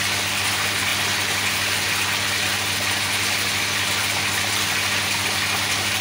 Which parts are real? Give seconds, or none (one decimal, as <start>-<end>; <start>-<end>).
0.0-6.0